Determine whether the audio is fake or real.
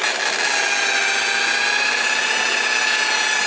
real